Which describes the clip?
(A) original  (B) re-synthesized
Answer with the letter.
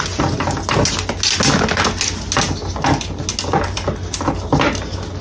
A